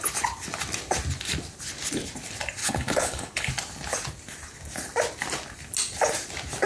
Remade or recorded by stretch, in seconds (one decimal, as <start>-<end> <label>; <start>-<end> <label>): 0.0-2.6 recorded; 2.6-3.5 remade; 3.5-6.7 recorded